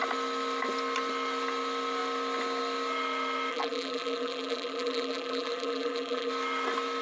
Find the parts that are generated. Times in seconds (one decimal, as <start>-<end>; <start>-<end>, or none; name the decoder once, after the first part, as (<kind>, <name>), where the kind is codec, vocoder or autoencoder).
3.5-6.3 (vocoder, BigVGAN v2)